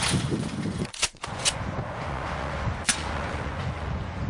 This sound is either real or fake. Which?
fake